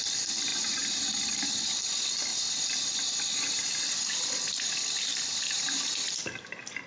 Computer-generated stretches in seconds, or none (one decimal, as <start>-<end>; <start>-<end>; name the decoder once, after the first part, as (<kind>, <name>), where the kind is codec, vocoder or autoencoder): 0.5-1.1 (vocoder, BigVGAN v2); 5.1-5.8